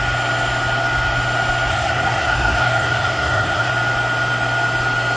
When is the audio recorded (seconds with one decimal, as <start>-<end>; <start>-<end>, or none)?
0.0-1.7; 3.7-5.2